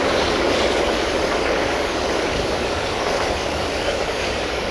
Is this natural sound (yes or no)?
no